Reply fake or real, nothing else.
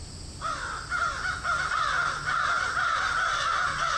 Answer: real